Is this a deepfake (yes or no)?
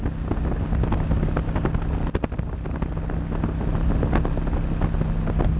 no